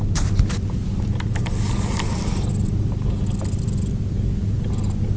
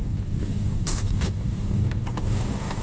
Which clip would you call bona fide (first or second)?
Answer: first